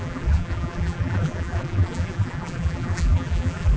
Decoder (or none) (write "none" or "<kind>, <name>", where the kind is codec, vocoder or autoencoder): vocoder, BigVGAN v2